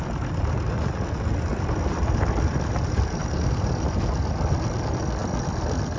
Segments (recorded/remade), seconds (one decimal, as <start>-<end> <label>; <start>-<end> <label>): 0.0-6.0 recorded